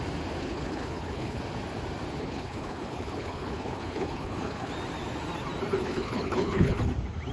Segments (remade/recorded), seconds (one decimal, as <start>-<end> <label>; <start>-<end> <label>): 0.0-0.4 recorded; 0.4-1.4 remade; 1.4-2.2 recorded; 2.2-4.7 remade; 4.7-5.8 recorded; 5.8-6.8 remade; 6.8-7.3 recorded